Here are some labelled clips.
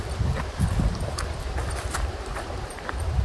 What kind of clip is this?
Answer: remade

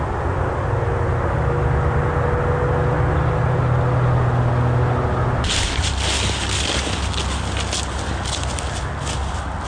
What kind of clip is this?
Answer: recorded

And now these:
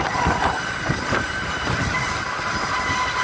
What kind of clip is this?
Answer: remade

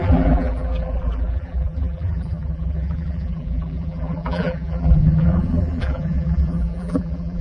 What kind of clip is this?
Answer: remade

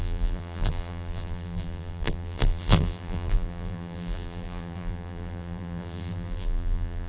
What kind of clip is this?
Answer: remade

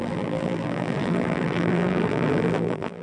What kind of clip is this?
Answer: remade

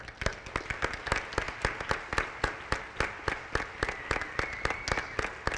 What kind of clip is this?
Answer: recorded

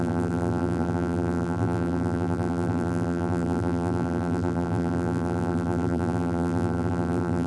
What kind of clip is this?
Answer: remade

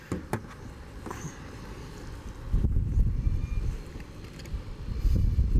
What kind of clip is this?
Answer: recorded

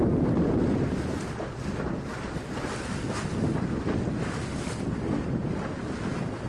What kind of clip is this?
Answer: recorded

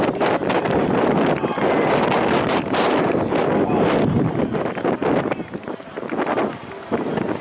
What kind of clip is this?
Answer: recorded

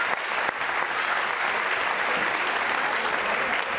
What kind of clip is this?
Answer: recorded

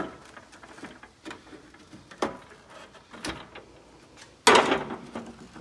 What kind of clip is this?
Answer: recorded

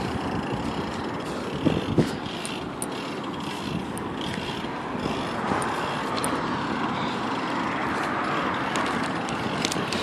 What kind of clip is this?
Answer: recorded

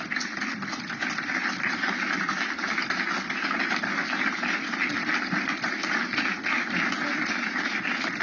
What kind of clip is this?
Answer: recorded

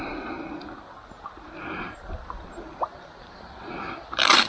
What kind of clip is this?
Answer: recorded